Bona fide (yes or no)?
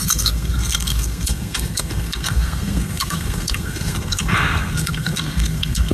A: no